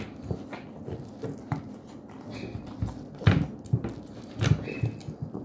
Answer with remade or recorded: recorded